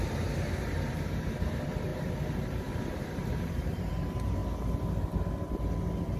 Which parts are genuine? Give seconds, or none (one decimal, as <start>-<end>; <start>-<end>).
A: 4.4-6.2